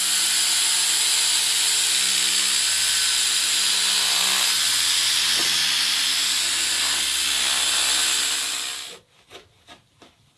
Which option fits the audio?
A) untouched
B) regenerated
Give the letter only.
A